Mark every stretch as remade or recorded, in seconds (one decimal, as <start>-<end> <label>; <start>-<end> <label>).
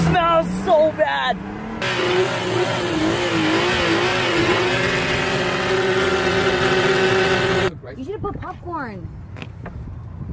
0.0-2.0 recorded; 2.0-3.0 remade; 3.0-4.1 recorded; 4.1-7.9 remade; 7.9-10.3 recorded